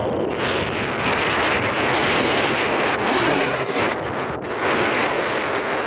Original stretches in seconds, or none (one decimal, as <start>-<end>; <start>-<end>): 0.0-3.1; 3.8-5.9